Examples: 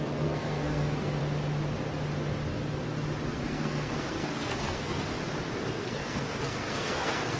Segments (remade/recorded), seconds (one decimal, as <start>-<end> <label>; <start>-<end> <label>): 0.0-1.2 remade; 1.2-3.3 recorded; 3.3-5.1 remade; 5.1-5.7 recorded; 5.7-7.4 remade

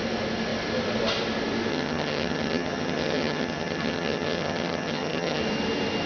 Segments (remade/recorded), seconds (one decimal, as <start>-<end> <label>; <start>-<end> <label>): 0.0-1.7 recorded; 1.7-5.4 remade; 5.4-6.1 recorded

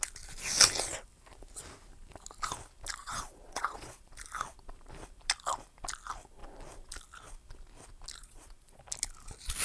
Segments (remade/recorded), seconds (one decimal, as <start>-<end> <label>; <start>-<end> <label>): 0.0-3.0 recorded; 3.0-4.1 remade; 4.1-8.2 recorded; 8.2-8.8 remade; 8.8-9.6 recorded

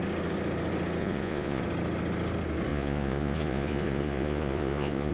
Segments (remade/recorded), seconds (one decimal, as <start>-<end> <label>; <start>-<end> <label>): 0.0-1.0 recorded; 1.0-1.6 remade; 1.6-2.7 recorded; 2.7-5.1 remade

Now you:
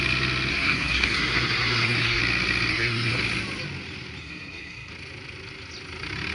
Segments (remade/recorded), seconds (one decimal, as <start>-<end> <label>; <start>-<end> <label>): 0.0-0.5 recorded; 0.5-2.2 remade; 2.2-2.7 recorded; 2.7-3.2 remade; 3.2-4.2 recorded; 4.2-4.9 remade; 4.9-6.3 recorded

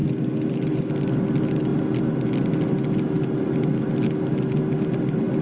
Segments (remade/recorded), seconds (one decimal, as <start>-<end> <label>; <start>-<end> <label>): 0.0-5.4 recorded